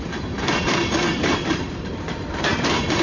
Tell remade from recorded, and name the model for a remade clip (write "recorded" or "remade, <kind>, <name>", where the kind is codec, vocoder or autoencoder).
remade, vocoder, BigVGAN v2